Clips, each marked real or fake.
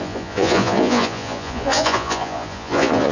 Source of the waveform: fake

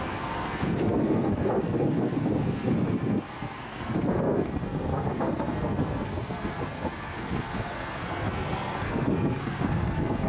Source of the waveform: fake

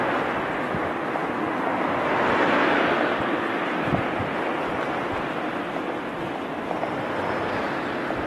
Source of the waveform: real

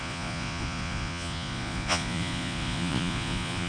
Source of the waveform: fake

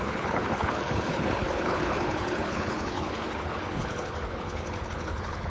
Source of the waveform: fake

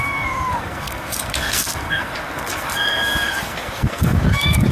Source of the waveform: fake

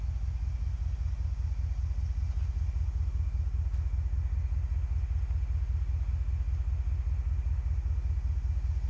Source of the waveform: real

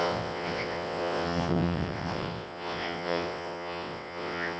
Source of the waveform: fake